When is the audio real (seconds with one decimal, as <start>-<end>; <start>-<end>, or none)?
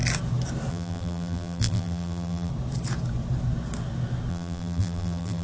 0.0-0.7; 2.5-4.3